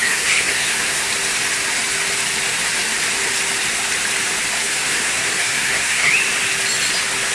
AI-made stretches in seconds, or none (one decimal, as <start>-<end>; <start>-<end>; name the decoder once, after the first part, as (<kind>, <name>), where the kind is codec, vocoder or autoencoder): 0.0-1.1 (codec, SNAC); 4.6-6.1